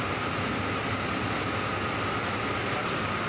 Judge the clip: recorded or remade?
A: recorded